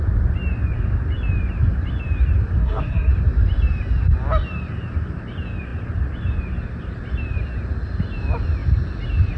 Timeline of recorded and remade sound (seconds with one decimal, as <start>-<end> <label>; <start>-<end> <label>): 0.0-2.6 recorded; 2.6-3.1 remade; 3.1-9.4 recorded